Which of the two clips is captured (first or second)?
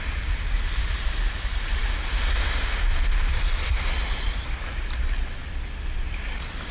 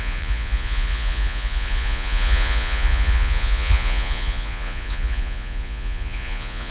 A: first